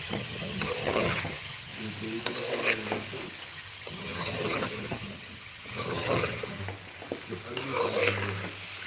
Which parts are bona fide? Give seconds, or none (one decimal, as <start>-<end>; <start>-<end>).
1.7-3.5; 6.6-8.9